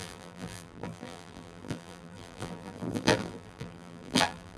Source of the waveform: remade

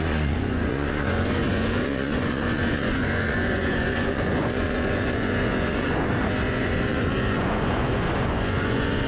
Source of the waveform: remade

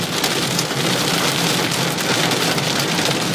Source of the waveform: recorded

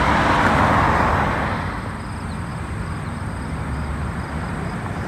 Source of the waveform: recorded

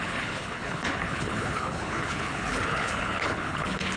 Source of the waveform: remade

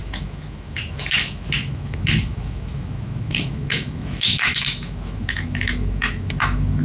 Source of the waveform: remade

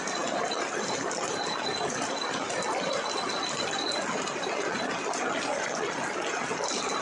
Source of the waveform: recorded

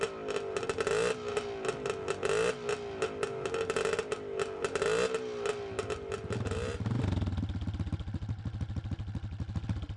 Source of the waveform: recorded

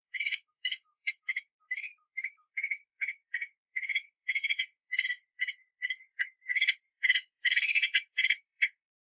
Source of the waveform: remade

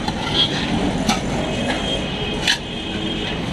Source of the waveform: recorded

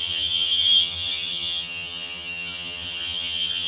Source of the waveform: remade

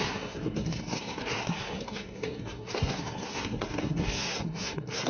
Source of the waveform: remade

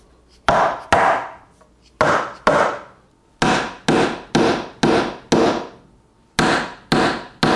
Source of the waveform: recorded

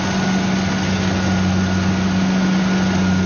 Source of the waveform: recorded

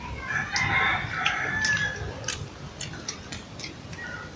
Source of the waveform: recorded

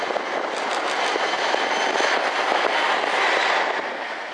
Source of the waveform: recorded